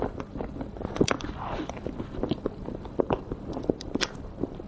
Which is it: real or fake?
real